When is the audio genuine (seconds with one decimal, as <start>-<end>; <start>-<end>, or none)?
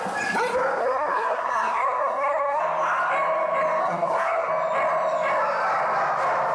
0.0-0.8; 2.6-3.8; 4.5-6.5